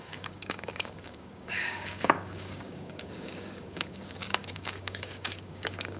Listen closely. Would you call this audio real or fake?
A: fake